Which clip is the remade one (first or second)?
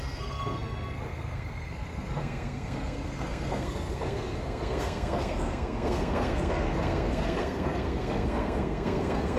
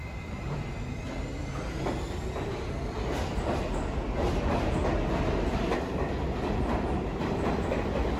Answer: first